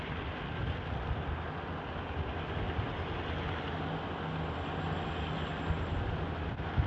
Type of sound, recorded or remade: recorded